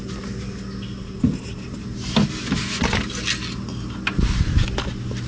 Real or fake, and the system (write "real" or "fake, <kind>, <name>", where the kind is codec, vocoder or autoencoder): real